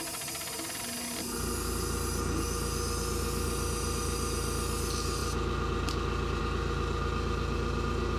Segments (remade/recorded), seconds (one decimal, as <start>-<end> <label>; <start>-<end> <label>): 0.0-8.2 recorded